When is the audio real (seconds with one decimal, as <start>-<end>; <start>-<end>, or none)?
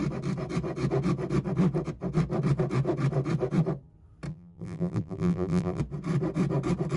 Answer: 0.0-4.3; 5.8-7.0